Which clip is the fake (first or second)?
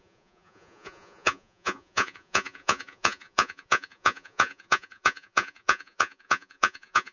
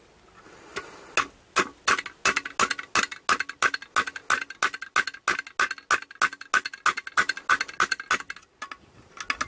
first